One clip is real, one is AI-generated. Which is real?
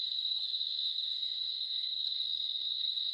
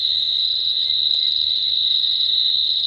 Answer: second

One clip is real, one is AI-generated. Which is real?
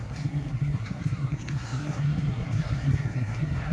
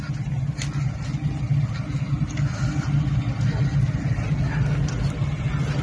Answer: second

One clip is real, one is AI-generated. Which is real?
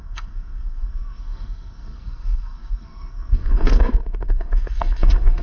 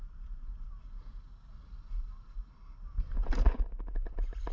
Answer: second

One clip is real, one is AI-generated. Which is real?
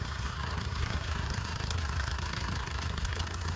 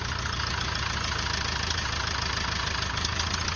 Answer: second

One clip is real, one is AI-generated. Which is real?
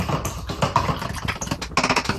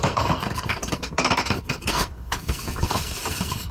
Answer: first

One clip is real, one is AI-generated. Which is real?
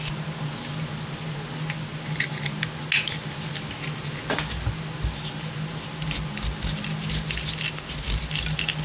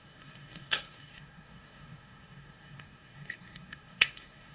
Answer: first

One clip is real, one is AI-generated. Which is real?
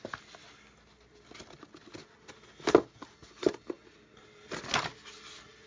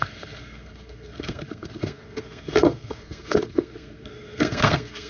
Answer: first